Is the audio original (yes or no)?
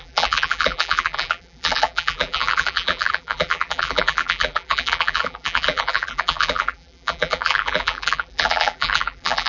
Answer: no